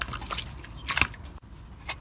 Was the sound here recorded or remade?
recorded